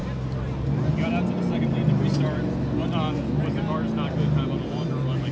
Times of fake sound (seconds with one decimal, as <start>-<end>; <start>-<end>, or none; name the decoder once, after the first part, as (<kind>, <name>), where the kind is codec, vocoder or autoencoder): none